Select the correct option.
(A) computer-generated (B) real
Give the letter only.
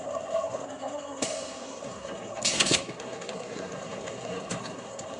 A